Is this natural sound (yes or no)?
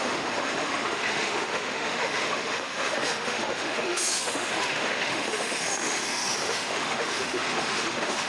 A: no